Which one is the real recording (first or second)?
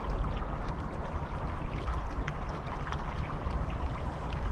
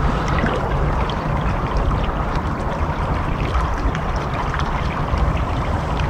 first